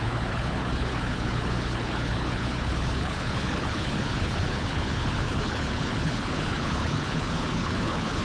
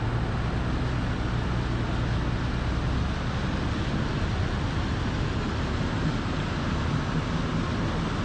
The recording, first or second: second